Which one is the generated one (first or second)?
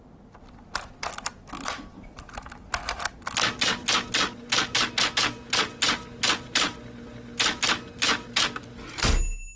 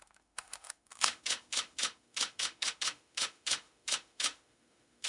second